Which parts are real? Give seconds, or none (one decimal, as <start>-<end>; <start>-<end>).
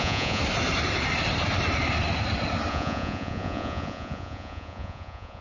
0.4-2.7